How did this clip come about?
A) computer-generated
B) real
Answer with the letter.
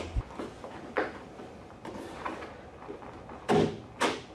B